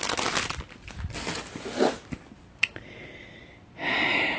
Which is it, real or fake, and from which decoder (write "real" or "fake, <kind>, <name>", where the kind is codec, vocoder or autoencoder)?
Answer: real